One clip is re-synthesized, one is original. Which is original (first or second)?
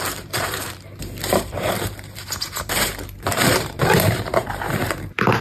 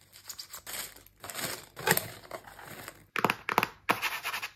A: second